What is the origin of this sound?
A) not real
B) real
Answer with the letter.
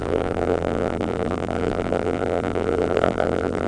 A